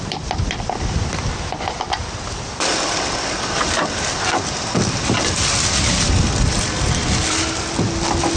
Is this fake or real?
fake